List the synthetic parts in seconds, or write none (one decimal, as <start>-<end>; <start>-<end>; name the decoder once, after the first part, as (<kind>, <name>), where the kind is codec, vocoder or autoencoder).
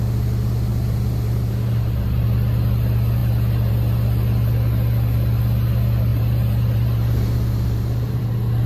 0.7-2.3 (vocoder, BigVGAN v2); 6.1-8.2